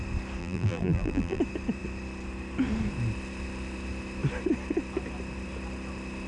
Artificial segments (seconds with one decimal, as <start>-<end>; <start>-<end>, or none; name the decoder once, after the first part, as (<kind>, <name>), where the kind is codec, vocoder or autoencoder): 0.4-1.4 (vocoder, BigVGAN v2)